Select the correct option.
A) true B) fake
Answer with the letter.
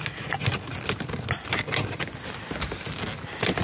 A